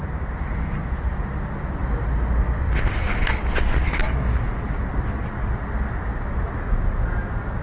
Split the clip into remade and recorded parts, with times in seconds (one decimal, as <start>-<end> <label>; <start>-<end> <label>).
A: 0.0-1.8 recorded; 1.8-4.0 remade; 4.0-7.6 recorded